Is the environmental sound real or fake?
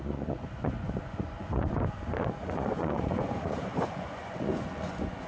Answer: fake